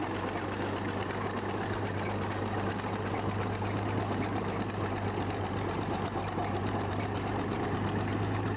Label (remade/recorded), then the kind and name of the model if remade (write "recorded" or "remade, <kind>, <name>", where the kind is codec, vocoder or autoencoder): remade, vocoder, BigVGAN v2